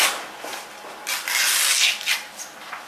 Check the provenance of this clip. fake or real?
real